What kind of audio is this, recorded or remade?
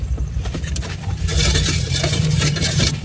remade